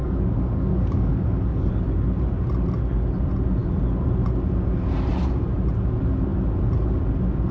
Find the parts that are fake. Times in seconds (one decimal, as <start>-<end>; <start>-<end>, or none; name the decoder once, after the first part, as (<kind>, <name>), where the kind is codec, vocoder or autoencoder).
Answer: 0.0-1.7 (codec, DAC)